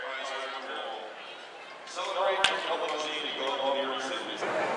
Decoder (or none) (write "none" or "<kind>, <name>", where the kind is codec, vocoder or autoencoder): none